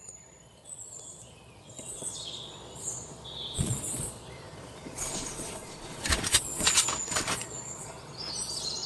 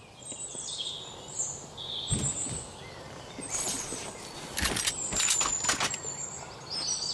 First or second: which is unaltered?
second